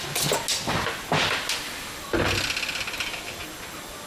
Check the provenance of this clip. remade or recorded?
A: recorded